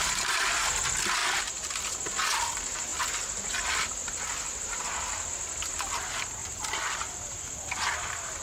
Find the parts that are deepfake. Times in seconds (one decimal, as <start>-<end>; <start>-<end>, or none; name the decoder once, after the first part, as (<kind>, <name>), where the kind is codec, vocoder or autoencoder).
1.2-1.7 (vocoder, BigVGAN v2); 6.4-7.8